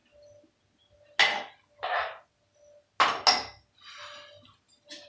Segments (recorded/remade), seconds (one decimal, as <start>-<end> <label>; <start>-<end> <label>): 0.0-5.1 recorded